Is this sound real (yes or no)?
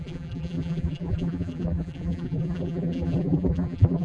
no